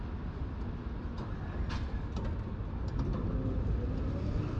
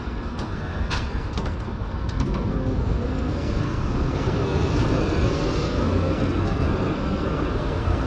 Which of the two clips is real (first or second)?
first